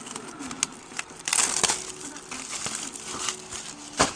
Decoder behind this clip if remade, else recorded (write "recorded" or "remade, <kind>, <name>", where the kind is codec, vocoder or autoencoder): recorded